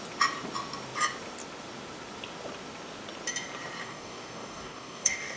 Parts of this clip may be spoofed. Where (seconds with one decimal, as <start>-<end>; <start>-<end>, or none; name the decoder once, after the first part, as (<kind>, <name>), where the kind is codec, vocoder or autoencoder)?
3.8-5.4 (codec, DAC)